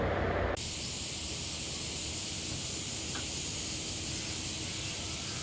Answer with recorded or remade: recorded